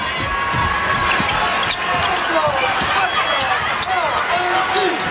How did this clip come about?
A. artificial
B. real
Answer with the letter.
B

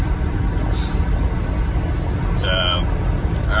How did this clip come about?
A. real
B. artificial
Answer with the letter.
A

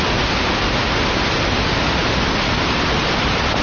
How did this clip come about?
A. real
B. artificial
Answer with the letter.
A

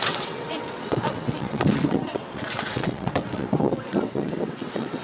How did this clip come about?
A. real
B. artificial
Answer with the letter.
B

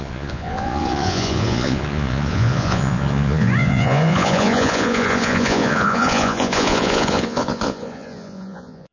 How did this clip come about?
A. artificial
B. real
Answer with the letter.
A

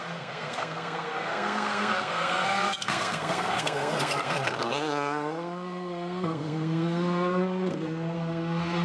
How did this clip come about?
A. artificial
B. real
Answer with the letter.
A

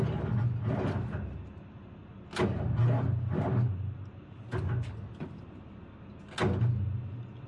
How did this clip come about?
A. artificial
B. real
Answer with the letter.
B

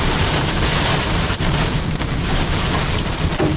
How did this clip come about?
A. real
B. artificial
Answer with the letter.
B